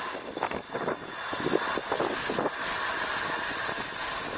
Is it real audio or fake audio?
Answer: real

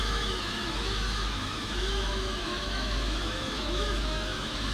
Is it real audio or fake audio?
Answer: fake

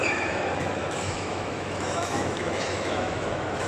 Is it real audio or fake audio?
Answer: fake